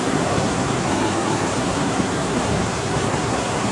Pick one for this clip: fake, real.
fake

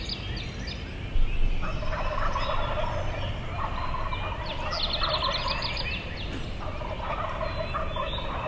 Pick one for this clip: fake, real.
real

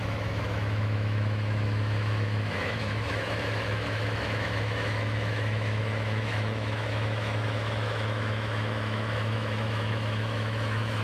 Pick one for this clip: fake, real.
fake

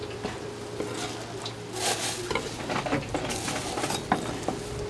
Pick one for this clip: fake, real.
real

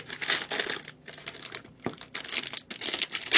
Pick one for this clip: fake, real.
real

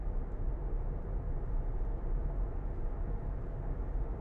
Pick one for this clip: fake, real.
real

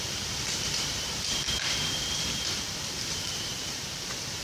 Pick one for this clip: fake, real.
fake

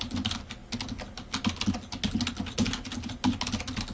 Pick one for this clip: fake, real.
real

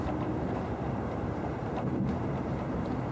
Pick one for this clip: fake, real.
fake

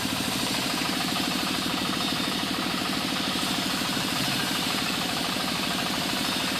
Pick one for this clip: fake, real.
fake